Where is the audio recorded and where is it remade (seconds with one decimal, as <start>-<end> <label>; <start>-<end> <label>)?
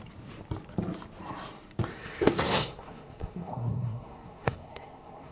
0.0-1.9 recorded; 1.9-5.3 remade